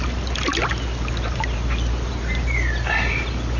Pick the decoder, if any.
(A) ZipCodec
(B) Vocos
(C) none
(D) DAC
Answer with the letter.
C